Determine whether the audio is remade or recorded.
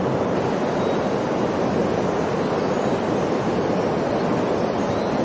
recorded